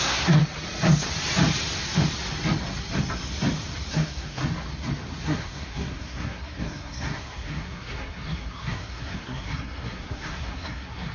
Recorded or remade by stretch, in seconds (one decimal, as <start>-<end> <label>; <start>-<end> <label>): 0.0-0.4 remade; 0.4-3.9 recorded; 3.9-4.4 remade; 4.4-5.2 recorded; 5.2-11.1 remade